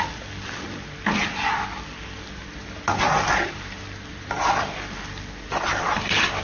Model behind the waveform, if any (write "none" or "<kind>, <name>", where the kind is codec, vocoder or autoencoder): none